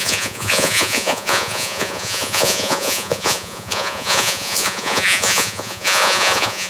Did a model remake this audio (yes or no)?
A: yes